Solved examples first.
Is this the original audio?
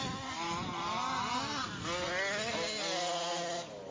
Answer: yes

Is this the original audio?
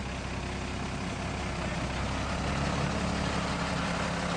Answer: yes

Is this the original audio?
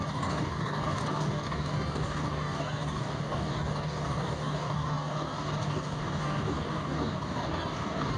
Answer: no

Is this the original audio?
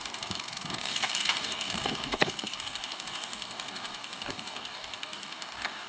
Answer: no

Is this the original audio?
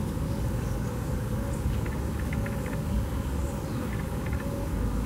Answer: no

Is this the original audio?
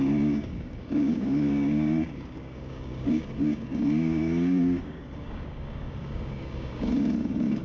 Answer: no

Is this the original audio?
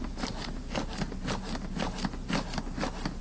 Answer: yes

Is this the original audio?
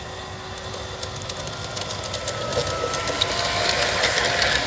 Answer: yes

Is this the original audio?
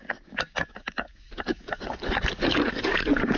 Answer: no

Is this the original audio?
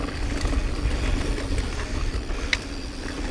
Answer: yes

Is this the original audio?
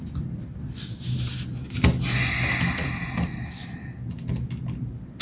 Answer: yes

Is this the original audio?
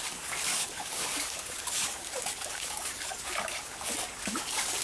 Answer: no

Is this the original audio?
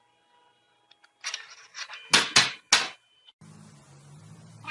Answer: yes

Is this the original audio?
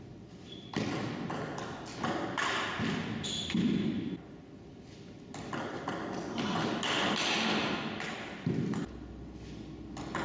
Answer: yes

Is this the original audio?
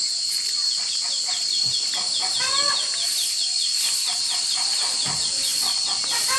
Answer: yes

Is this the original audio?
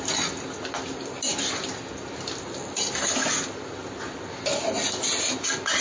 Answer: yes